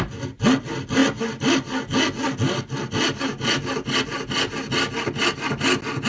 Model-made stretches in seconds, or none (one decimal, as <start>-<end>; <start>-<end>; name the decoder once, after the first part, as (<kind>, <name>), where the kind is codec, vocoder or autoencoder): none